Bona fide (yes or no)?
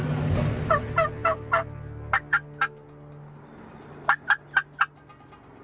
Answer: yes